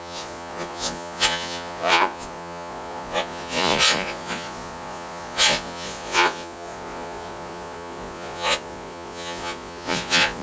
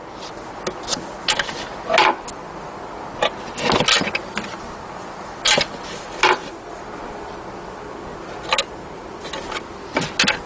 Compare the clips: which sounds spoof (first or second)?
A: first